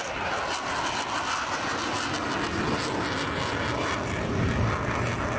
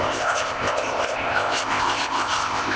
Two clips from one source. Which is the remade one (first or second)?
second